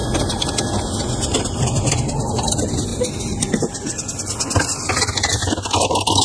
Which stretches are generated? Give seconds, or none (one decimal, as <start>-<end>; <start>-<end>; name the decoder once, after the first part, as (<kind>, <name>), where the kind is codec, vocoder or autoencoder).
0.0-5.4 (vocoder, BigVGAN v2)

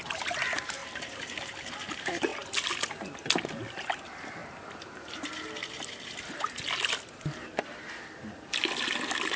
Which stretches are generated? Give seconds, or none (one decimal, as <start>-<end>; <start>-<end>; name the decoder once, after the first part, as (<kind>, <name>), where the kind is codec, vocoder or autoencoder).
none

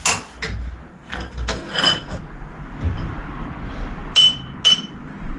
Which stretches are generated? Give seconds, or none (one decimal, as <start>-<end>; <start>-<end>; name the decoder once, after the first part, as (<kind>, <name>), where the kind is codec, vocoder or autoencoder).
0.9-2.2 (codec, SNAC)

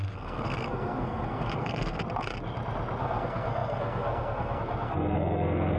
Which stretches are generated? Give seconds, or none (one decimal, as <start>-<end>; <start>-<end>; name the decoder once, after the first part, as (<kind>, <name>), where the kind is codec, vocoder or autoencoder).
0.0-2.0 (codec, SNAC); 3.0-5.8

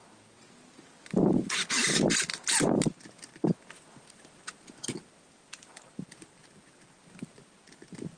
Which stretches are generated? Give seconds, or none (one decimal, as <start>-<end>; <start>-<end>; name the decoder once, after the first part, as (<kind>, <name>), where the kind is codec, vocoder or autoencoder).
none